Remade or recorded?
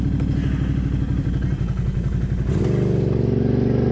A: recorded